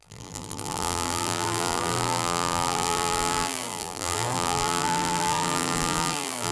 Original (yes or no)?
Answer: no